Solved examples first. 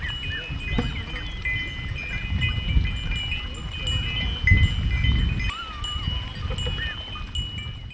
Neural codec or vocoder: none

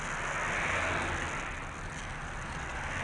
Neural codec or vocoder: none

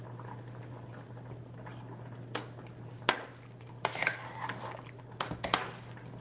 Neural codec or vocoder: none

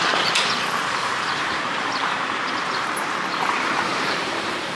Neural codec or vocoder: vocoder, BigVGAN v2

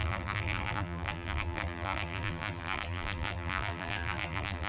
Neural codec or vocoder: vocoder, BigVGAN v2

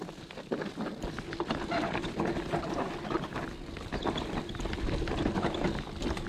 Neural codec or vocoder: none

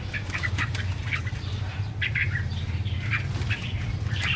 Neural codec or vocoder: vocoder, BigVGAN v2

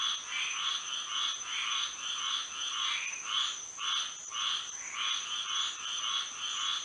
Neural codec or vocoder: none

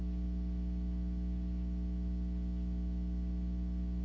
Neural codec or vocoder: none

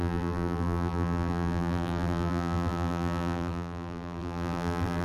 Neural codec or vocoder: vocoder, BigVGAN v2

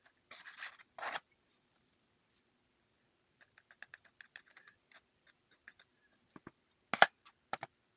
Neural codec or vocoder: none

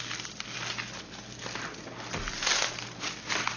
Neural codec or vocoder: none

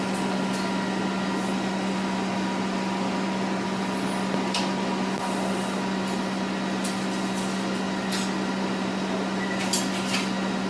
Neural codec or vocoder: none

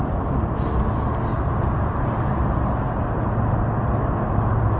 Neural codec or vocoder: none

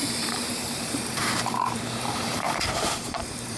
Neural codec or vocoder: vocoder, BigVGAN v2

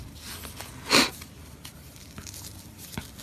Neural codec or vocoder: vocoder, BigVGAN v2